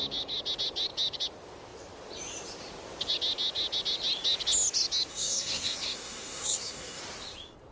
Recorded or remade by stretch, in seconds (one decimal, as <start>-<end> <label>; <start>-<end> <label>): 0.0-5.1 recorded; 5.1-7.0 remade; 7.0-7.7 recorded

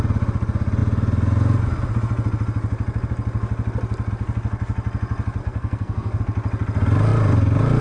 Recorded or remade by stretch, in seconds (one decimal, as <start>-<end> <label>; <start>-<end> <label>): 0.0-5.4 recorded; 5.4-6.2 remade; 6.2-7.8 recorded

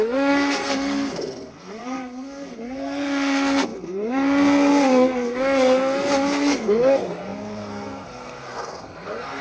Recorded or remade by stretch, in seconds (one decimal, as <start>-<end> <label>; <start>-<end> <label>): 0.0-9.4 remade

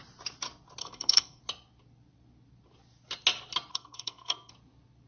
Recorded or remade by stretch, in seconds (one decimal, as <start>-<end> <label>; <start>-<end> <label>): 0.0-0.8 recorded; 0.8-1.4 remade; 1.4-3.7 recorded; 3.7-4.5 remade; 4.5-5.1 recorded

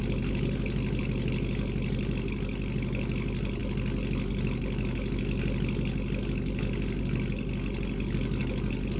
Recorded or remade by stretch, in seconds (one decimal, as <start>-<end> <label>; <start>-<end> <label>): 0.0-9.0 recorded

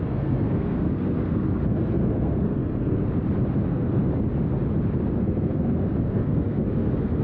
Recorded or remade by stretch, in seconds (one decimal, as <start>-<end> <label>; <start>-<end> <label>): 0.0-3.0 remade; 3.0-3.6 recorded; 3.6-4.0 remade; 4.0-5.2 recorded; 5.2-7.2 remade

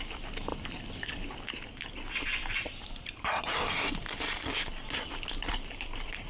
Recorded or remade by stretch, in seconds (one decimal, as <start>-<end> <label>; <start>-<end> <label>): 0.0-6.3 recorded